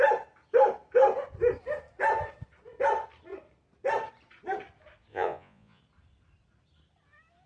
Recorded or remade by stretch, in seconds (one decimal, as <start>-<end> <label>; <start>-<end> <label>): 0.0-5.1 recorded; 5.1-5.8 remade; 5.8-7.5 recorded